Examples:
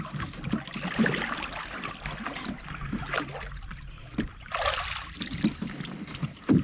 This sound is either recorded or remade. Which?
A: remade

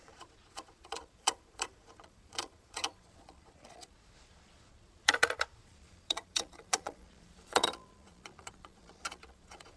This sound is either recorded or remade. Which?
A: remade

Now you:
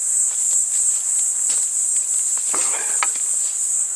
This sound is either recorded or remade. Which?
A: recorded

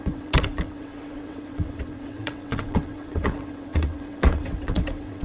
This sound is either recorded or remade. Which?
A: remade